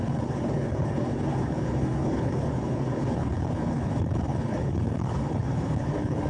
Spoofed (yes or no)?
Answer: yes